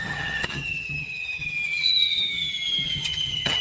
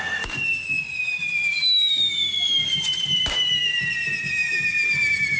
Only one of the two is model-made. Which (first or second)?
first